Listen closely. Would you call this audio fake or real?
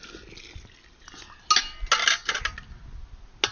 real